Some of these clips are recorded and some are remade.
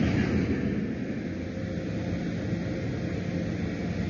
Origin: recorded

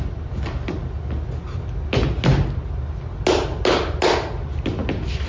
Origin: recorded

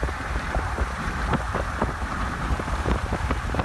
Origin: remade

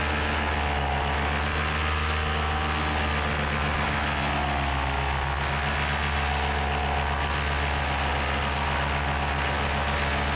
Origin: recorded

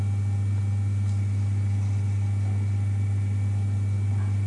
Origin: recorded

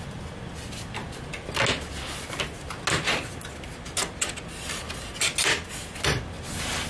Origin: recorded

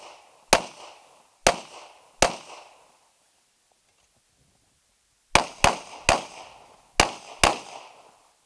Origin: recorded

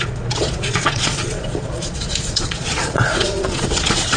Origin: remade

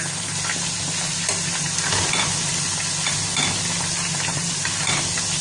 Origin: recorded